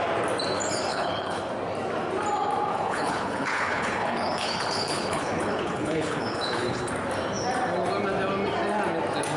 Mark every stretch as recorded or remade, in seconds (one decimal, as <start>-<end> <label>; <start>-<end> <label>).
0.0-0.9 recorded; 0.9-1.5 remade; 1.5-2.7 recorded; 2.7-6.9 remade; 6.9-9.4 recorded